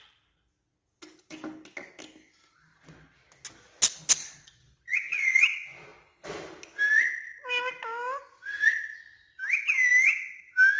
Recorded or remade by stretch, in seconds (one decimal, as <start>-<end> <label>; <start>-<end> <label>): 0.0-4.2 recorded; 4.2-5.4 remade; 5.4-10.8 recorded